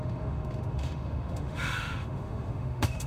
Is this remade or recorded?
remade